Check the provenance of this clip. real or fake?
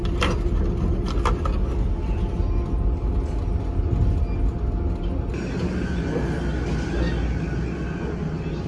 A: real